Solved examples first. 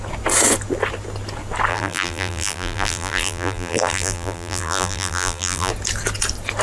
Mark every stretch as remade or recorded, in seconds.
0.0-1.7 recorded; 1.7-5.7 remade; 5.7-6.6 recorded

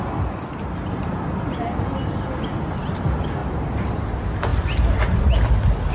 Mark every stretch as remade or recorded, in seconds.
0.0-3.4 recorded; 3.4-4.0 remade; 4.0-5.9 recorded

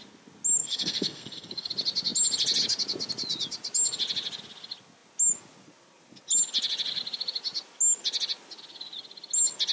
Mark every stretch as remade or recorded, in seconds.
0.0-0.6 recorded; 0.6-1.7 remade; 1.7-9.7 recorded